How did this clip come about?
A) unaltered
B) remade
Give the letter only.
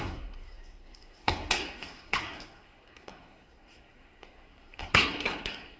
B